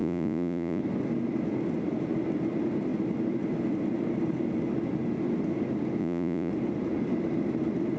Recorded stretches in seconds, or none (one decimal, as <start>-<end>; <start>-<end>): 0.8-6.0; 6.5-8.0